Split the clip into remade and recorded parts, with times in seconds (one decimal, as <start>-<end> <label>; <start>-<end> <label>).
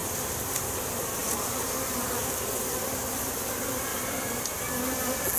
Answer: 0.0-0.7 remade; 0.7-3.9 recorded; 3.9-4.7 remade; 4.7-5.4 recorded